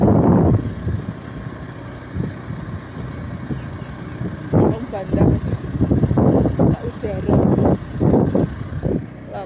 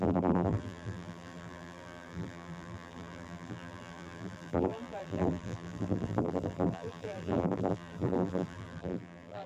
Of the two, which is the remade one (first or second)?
second